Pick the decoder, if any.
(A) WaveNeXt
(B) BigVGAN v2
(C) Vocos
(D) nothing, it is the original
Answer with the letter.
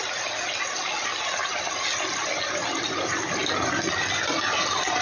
D